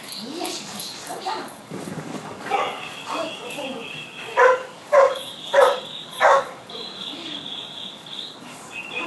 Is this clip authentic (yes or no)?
no